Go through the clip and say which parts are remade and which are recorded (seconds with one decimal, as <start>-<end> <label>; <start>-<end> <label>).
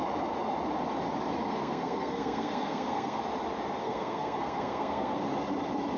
0.0-1.5 recorded; 1.5-3.2 remade; 3.2-3.8 recorded; 3.8-5.2 remade; 5.2-6.0 recorded